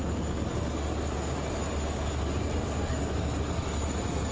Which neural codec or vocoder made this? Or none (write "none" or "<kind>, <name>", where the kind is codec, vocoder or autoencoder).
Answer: none